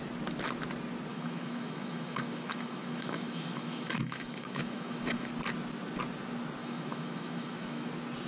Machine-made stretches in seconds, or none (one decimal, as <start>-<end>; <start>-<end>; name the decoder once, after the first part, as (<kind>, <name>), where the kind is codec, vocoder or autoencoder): 1.1-5.3 (autoencoder, DAC-VAE); 6.6-7.9